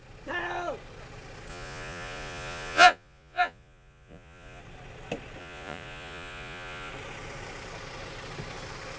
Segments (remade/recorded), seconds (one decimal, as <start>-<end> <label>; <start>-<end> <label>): 0.0-1.5 recorded; 1.5-4.6 remade; 4.6-5.4 recorded; 5.4-6.9 remade; 6.9-9.0 recorded